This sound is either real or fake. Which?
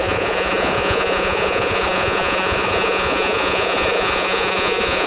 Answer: fake